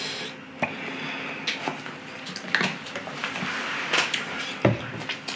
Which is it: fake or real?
real